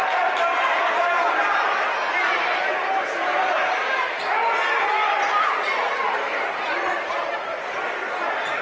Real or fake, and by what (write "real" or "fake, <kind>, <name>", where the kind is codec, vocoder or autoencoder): real